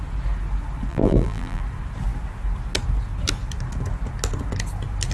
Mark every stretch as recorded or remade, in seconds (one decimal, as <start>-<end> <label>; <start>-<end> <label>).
0.0-0.9 recorded; 0.9-1.6 remade; 1.6-5.1 recorded